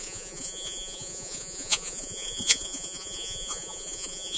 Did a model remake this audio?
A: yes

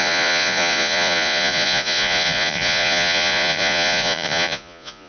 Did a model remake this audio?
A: yes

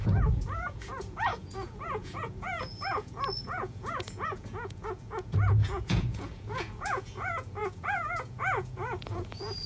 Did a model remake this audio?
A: yes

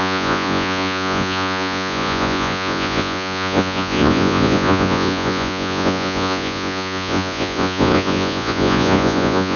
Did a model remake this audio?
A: yes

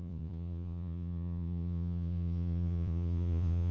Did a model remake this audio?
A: yes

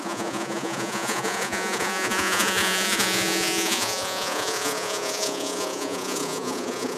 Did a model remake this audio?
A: yes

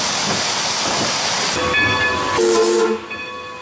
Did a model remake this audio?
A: no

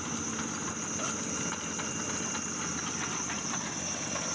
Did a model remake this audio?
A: no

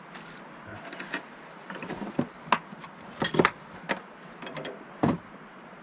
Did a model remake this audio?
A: no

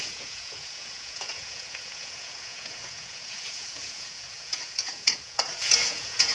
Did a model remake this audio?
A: yes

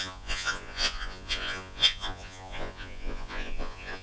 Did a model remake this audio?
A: yes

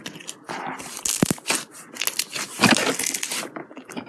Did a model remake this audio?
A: no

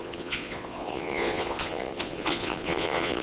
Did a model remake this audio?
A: yes